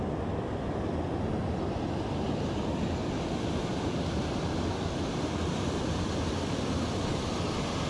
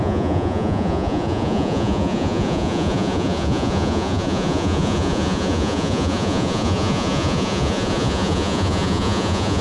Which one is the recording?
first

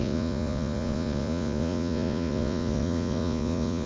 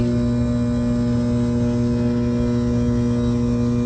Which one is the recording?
second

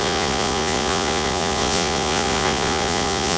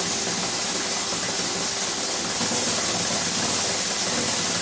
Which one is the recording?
second